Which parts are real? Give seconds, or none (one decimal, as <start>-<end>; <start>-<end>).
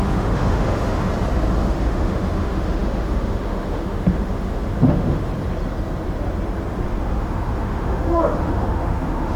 1.1-1.6; 5.3-7.0